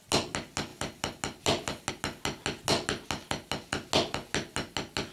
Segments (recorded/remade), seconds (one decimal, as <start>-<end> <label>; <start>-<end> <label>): 0.0-5.1 recorded